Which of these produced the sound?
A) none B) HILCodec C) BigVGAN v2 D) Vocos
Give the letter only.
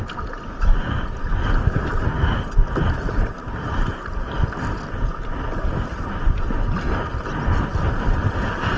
A